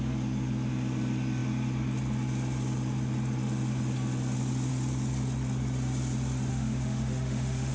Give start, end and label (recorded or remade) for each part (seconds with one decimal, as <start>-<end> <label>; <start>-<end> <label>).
0.0-6.5 recorded; 6.5-7.7 remade